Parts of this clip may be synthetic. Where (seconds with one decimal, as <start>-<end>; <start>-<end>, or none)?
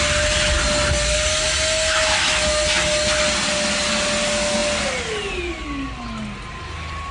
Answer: none